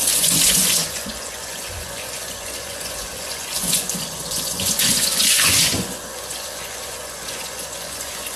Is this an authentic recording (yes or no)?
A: no